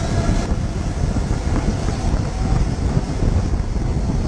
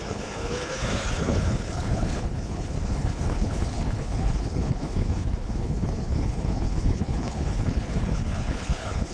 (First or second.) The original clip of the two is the first